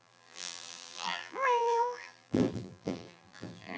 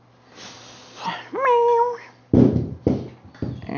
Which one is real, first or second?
second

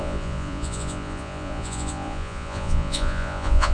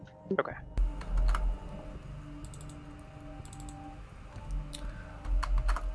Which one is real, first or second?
second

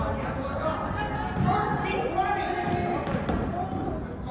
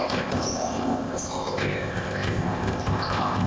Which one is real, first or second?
first